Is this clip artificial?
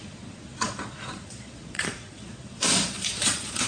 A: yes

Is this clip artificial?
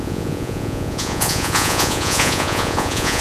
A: yes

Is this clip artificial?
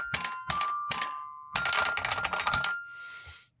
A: no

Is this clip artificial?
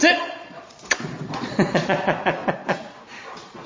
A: yes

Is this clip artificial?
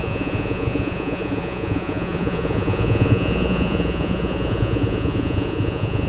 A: yes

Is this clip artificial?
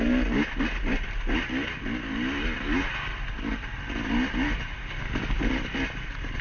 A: no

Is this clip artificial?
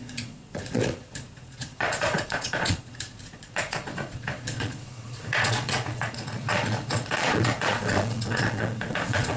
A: yes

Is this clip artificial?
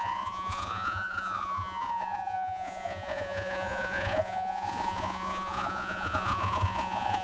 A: yes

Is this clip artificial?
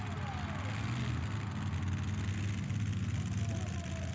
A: no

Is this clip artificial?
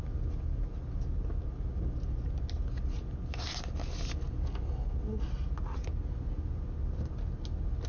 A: no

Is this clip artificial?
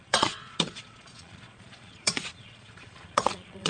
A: yes